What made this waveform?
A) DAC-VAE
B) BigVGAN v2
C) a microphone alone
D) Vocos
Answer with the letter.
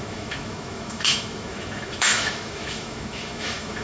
A